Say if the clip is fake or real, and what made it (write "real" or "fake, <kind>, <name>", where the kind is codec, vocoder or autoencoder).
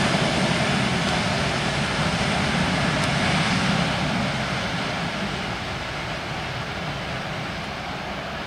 real